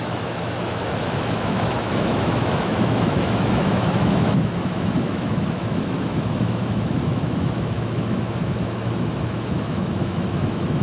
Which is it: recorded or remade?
remade